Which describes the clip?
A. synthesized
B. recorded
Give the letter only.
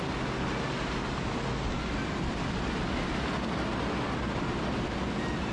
B